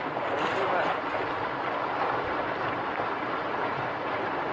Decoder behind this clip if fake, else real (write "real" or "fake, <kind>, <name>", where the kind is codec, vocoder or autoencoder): fake, vocoder, BigVGAN v2